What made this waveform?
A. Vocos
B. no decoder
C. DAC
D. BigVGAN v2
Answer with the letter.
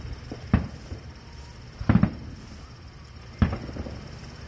B